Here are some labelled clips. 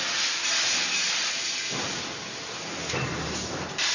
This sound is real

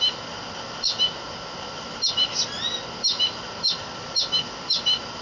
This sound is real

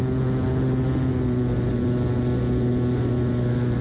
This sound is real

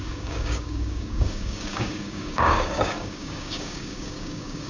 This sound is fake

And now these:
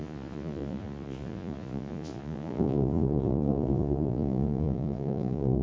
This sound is fake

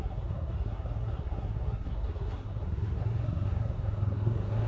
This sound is fake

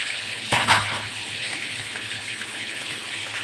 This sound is fake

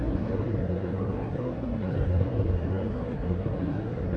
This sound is fake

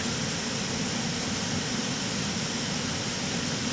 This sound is real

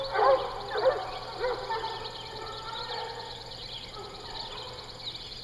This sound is real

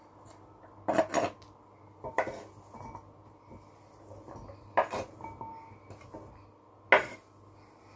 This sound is real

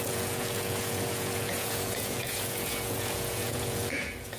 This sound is fake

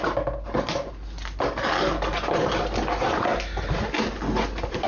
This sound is real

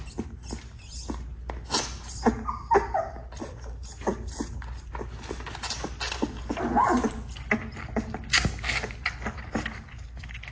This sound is real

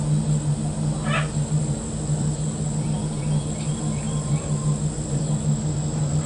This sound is real